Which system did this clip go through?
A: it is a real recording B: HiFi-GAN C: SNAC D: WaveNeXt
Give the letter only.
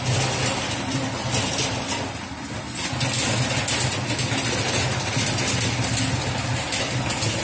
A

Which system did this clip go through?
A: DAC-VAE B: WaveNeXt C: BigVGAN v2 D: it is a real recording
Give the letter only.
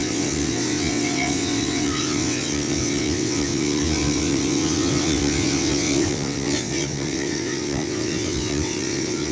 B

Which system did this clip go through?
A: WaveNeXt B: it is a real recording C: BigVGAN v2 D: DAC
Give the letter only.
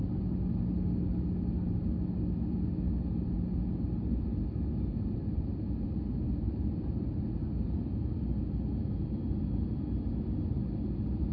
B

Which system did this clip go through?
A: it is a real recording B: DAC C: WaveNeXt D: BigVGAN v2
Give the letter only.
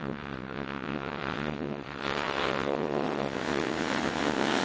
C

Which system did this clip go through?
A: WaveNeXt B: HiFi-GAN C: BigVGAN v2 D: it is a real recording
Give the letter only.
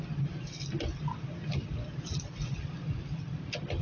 D